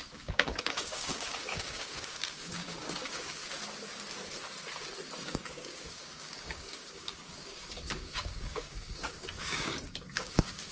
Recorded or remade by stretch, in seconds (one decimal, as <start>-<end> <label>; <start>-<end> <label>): 0.0-3.4 remade; 3.4-5.2 recorded; 5.2-10.7 remade